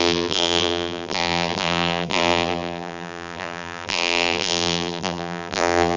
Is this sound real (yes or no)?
no